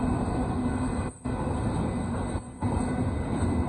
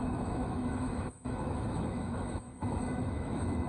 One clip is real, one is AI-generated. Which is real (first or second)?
first